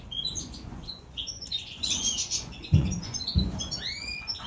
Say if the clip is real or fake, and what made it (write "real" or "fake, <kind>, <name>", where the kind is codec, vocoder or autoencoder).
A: fake, vocoder, Vocos